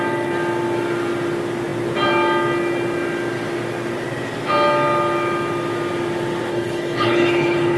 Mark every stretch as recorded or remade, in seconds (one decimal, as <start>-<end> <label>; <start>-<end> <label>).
0.0-6.5 recorded; 6.5-7.8 remade